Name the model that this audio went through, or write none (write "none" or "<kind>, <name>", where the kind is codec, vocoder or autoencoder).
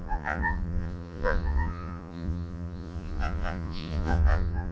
vocoder, Vocos